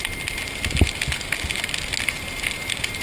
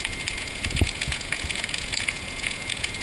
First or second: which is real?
first